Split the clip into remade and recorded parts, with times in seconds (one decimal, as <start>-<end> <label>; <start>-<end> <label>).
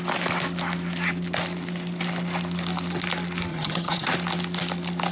0.0-3.5 recorded; 3.5-4.1 remade; 4.1-5.1 recorded